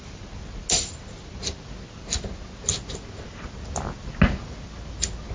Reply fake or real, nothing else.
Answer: real